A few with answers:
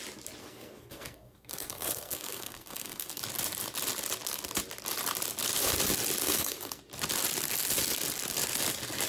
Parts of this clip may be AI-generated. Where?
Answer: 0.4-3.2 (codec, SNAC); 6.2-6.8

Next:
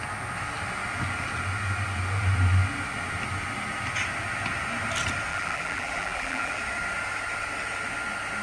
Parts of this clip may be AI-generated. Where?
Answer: 5.3-6.6 (vocoder, BigVGAN v2)

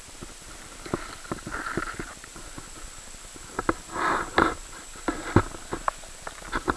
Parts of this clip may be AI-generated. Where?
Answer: 1.5-5.1 (vocoder, BigVGAN v2)

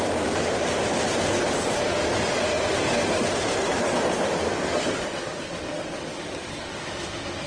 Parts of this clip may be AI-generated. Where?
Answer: none

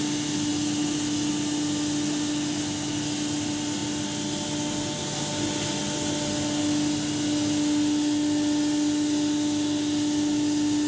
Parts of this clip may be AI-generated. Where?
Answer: none

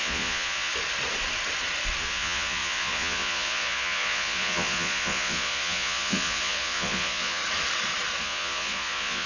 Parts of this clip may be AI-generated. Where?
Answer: 0.0-0.7 (vocoder, Vocos); 2.0-7.4; 8.2-9.3

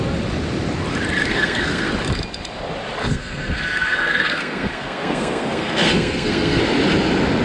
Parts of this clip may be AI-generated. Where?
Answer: 1.3-1.9 (codec, SNAC); 3.0-6.6